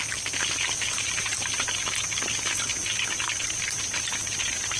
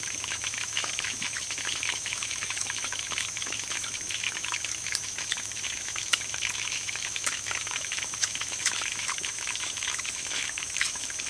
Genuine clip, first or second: first